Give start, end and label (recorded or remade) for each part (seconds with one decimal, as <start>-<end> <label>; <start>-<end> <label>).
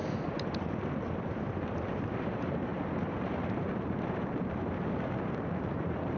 0.0-6.2 remade